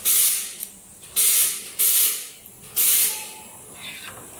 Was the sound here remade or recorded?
recorded